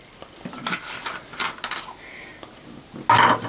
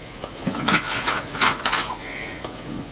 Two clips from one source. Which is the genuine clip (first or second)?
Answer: first